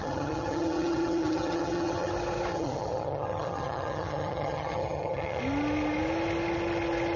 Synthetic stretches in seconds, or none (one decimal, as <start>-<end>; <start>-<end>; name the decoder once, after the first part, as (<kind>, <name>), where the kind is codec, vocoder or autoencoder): 0.0-2.1 (vocoder, HiFi-GAN); 2.5-5.4